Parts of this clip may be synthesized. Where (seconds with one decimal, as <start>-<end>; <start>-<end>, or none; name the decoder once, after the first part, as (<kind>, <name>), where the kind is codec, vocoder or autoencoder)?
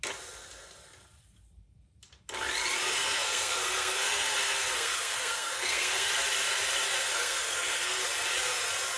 2.9-6.1 (codec, SNAC); 7.0-8.0